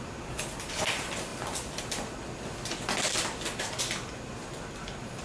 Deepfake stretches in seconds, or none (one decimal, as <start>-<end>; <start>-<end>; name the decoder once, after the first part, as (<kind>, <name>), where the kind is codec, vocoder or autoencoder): none